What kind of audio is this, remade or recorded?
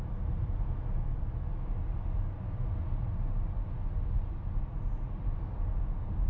recorded